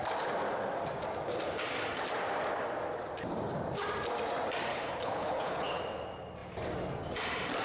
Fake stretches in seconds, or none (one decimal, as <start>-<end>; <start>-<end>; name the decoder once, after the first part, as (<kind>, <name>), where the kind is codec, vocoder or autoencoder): 4.7-5.8 (codec, HILCodec)